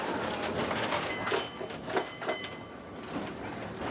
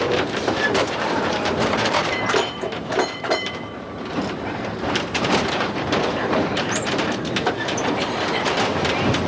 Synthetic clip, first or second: second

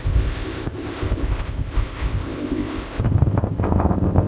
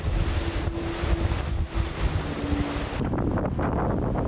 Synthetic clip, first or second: first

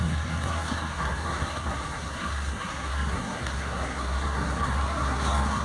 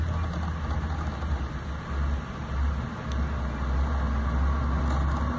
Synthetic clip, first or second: first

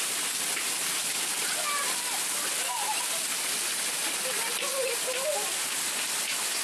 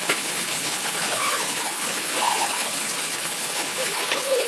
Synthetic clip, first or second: second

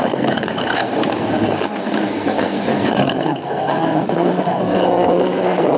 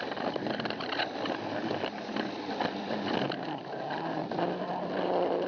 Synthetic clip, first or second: first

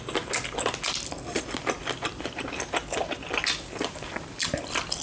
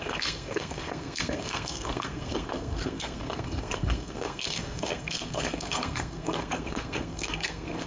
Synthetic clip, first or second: second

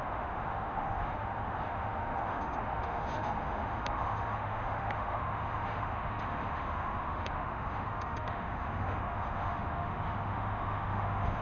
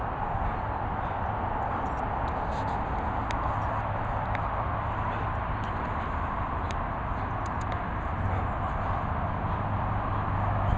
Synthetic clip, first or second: first